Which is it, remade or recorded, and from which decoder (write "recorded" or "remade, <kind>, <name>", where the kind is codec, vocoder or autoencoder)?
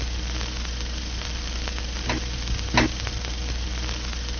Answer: recorded